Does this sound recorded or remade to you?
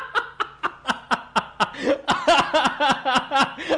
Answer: recorded